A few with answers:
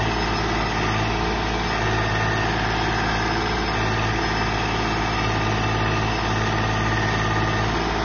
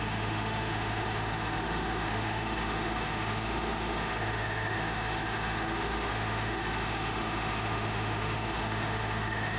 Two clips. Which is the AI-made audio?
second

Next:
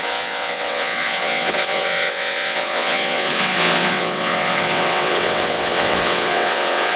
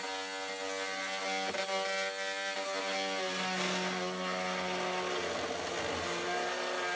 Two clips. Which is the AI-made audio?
first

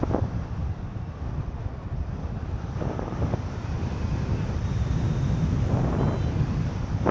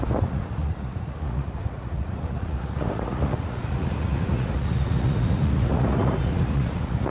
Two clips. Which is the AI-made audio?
second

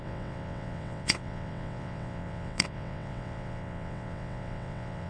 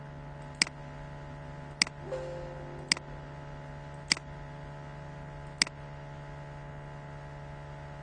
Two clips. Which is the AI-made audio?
first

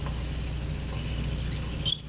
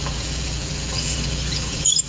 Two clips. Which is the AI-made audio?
second